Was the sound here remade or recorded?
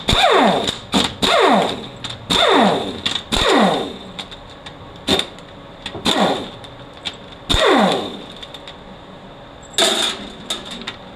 recorded